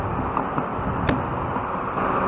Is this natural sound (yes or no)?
yes